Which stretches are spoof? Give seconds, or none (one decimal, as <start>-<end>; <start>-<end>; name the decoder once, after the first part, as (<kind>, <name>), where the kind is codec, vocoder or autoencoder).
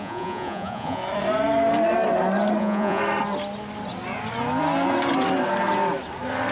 0.0-1.0 (vocoder, Vocos); 2.6-3.0